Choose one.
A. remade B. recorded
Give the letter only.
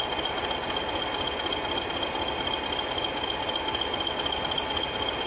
B